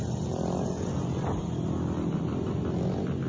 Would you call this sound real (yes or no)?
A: yes